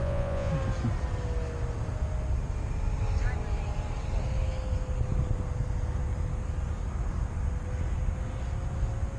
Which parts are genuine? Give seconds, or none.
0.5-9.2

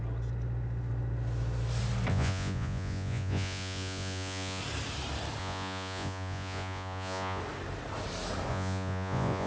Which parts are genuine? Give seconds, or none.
0.0-2.1; 4.6-5.4; 7.4-8.5

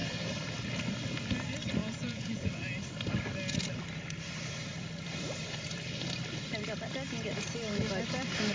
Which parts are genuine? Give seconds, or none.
0.0-1.8; 2.5-8.5